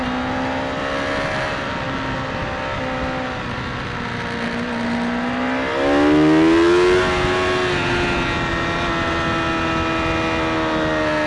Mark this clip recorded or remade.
recorded